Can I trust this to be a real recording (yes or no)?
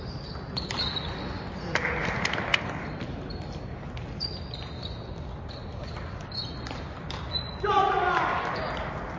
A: yes